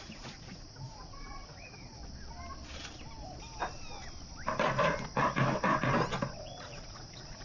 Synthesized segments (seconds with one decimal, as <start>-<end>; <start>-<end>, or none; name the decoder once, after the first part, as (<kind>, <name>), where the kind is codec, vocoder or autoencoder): 0.0-2.0 (vocoder, Vocos); 6.4-7.4